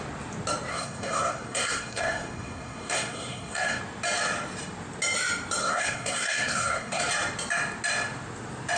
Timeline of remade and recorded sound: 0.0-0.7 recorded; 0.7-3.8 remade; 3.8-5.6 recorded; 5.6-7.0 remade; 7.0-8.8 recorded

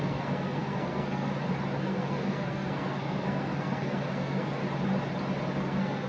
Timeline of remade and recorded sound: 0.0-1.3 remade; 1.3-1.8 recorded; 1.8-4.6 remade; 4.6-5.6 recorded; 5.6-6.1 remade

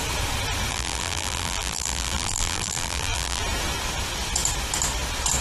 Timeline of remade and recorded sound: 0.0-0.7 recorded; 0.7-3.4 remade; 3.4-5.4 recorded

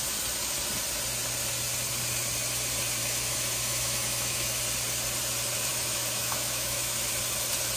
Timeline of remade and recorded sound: 0.0-3.0 recorded; 3.0-4.6 remade; 4.6-5.7 recorded; 5.7-7.1 remade; 7.1-7.8 recorded